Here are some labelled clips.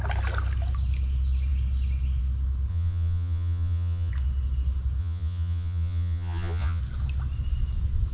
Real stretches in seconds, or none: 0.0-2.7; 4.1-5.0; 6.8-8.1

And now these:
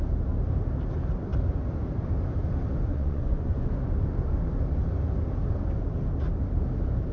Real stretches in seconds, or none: 0.0-2.9; 3.7-7.1